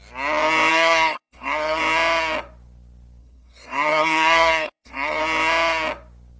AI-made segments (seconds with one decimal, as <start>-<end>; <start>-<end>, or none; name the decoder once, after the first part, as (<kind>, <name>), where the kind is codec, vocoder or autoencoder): 0.7-1.8 (codec, SNAC); 3.2-5.2